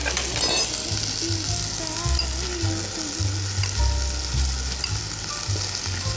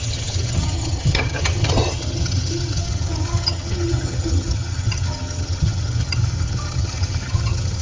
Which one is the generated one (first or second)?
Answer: second